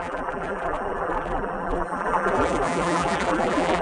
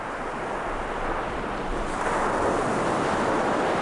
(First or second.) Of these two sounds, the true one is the second